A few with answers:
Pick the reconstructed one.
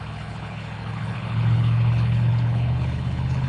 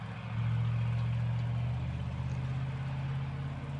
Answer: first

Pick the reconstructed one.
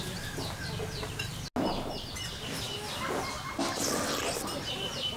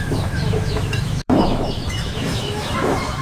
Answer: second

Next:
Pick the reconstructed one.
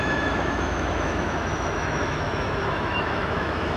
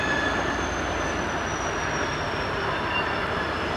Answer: first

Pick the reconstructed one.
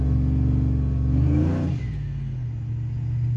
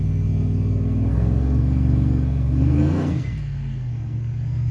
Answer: second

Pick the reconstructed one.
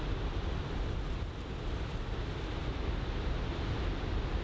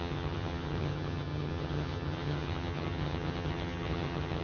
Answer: second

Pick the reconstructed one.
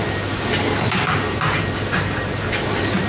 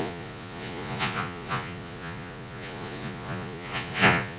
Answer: second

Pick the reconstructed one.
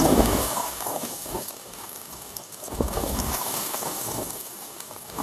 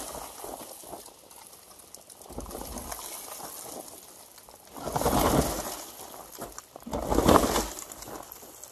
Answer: first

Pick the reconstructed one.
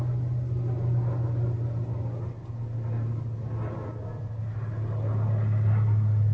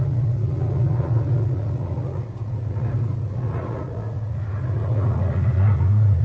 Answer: second